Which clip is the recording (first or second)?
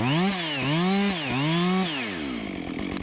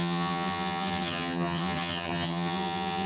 first